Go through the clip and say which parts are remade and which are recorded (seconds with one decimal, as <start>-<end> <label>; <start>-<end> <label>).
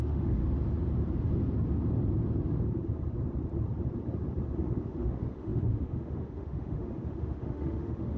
0.0-0.4 remade; 0.4-4.8 recorded; 4.8-8.2 remade